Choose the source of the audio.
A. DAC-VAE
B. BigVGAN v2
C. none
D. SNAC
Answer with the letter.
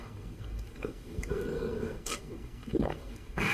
D